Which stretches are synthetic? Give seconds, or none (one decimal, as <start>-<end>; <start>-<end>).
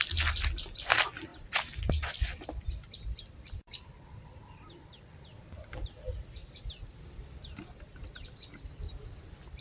1.3-5.4; 6.4-8.7